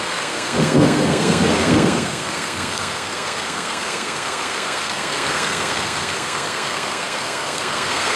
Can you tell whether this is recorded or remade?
remade